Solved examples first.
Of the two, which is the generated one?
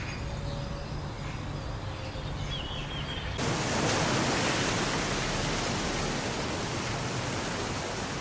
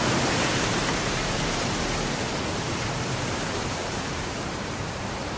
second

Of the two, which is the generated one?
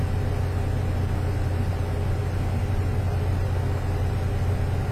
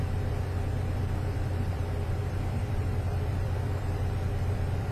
second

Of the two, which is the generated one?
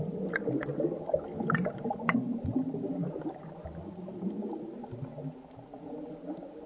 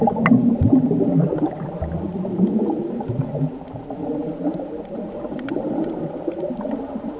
second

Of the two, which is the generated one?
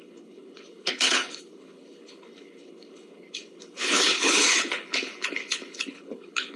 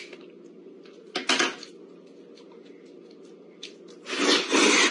first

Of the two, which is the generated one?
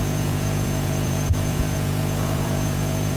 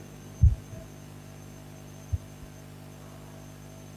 first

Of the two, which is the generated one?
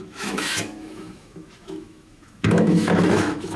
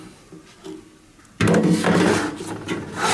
first